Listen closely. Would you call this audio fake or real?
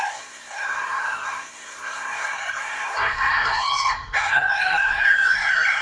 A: fake